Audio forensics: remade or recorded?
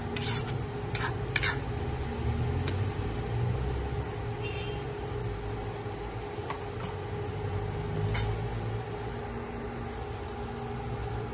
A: recorded